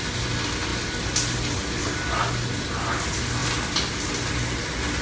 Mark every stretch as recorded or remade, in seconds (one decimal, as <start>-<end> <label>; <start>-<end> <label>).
0.0-5.0 recorded